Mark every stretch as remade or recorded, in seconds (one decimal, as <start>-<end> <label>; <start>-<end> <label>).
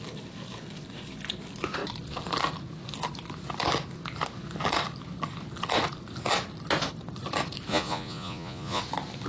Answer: 0.0-7.7 recorded; 7.7-8.8 remade; 8.8-9.3 recorded